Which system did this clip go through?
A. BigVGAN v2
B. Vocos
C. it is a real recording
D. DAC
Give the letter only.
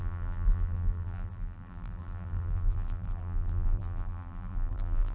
A